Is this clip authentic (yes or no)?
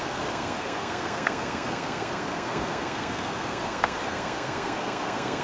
no